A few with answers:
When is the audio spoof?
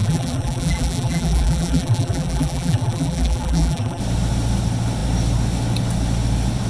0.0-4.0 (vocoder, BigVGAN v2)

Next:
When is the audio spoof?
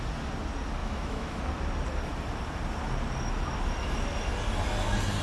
0.8-1.4 (autoencoder, DAC-VAE)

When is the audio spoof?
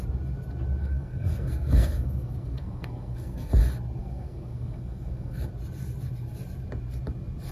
0.8-3.6 (codec, SNAC); 4.0-5.5